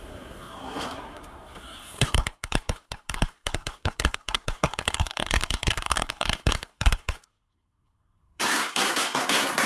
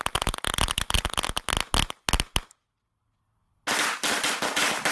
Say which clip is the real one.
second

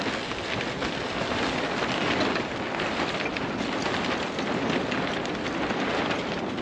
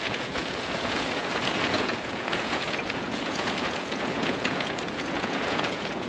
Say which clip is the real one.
first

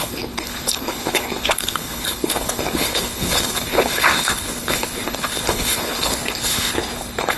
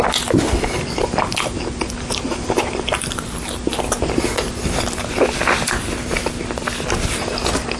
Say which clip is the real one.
second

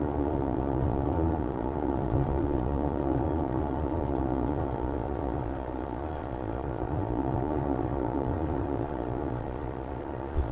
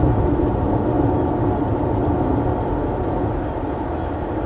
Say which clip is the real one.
second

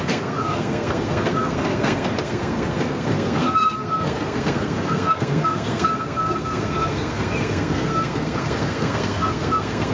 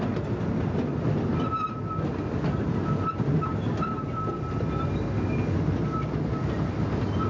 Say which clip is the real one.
second